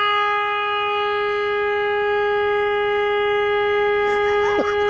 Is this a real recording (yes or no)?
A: yes